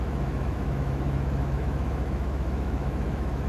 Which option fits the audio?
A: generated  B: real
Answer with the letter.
A